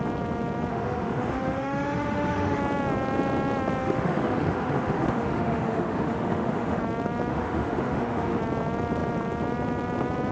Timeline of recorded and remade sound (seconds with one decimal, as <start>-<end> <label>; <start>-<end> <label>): 0.0-0.7 recorded; 0.7-2.6 remade; 2.6-3.8 recorded; 3.8-6.8 remade; 6.8-7.3 recorded; 7.3-8.4 remade; 8.4-10.3 recorded